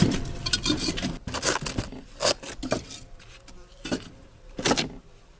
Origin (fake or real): real